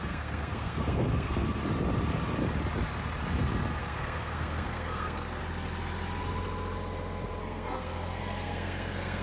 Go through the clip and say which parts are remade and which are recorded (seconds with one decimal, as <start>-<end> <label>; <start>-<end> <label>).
0.0-1.6 remade; 1.6-3.8 recorded; 3.8-5.4 remade; 5.4-7.4 recorded; 7.4-9.2 remade